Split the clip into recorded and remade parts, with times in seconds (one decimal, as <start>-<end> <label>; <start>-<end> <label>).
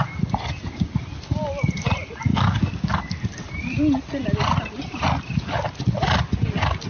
0.0-2.3 recorded; 2.3-3.3 remade; 3.3-6.9 recorded